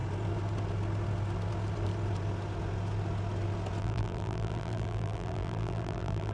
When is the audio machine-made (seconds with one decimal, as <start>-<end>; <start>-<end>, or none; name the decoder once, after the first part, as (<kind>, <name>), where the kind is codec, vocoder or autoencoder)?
3.8-6.3 (vocoder, BigVGAN v2)